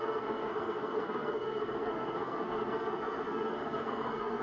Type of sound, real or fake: fake